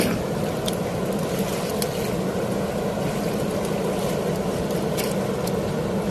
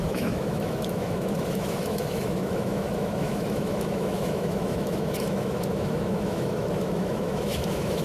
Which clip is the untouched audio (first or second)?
first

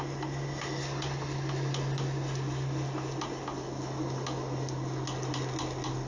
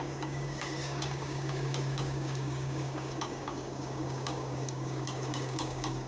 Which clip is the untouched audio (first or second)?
first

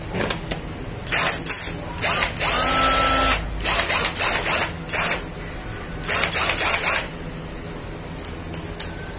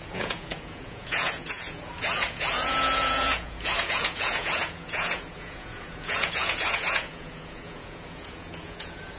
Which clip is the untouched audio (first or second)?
first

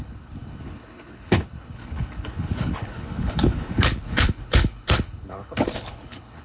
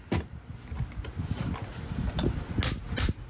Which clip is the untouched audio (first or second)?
second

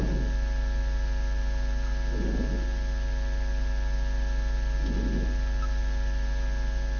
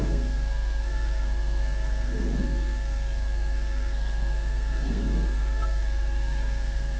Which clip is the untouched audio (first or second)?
first